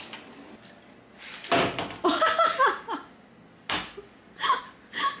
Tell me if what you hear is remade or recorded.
recorded